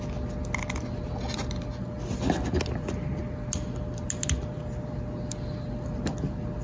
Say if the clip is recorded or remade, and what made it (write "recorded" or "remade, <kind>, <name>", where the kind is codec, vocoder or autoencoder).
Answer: recorded